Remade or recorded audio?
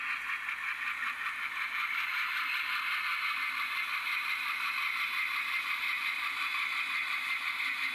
recorded